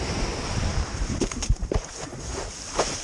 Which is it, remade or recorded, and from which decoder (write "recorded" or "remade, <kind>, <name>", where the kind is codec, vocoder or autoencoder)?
remade, vocoder, BigVGAN v2